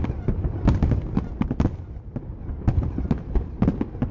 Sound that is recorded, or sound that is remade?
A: recorded